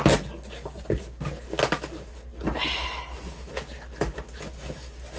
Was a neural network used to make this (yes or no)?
no